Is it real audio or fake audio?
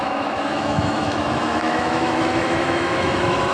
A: fake